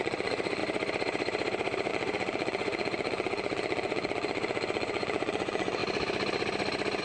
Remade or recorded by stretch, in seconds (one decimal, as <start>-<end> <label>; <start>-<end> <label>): 0.0-0.6 remade; 0.6-1.9 recorded; 1.9-5.8 remade; 5.8-7.0 recorded